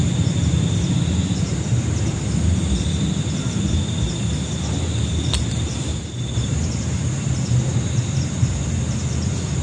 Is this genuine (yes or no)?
yes